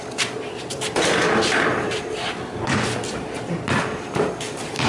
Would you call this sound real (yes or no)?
no